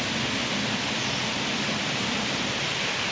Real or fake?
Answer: real